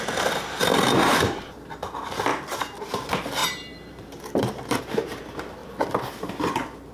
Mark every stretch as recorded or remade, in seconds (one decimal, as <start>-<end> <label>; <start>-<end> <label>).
0.0-0.7 recorded; 0.7-1.4 remade; 1.4-2.3 recorded; 2.3-3.0 remade; 3.0-3.4 recorded; 3.4-4.8 remade; 4.8-6.9 recorded